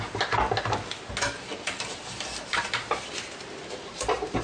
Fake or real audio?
real